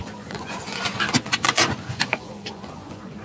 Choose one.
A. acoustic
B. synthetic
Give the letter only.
B